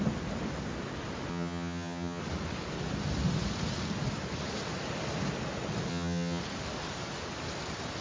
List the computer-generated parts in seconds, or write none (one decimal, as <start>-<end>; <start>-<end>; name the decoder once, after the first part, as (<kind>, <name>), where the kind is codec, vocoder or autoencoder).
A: 1.3-2.2 (vocoder, HiFi-GAN); 5.9-6.4